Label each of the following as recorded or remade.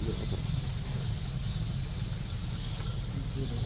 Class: recorded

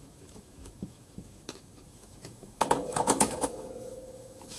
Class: remade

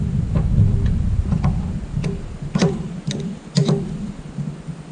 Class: recorded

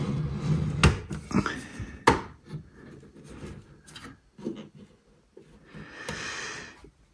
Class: recorded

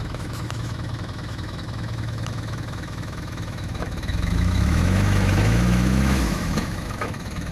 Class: remade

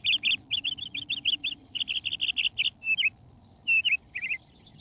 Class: recorded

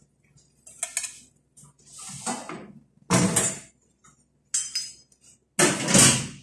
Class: recorded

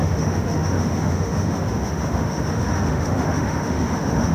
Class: remade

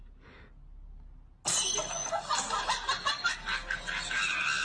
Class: recorded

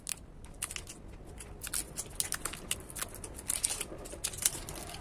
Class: recorded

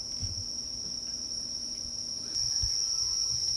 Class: recorded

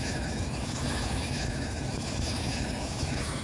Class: remade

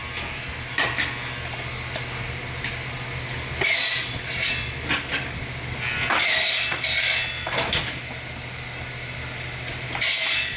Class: recorded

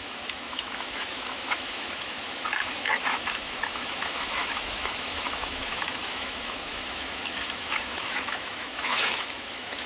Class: remade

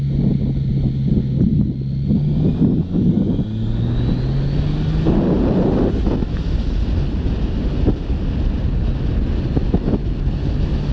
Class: recorded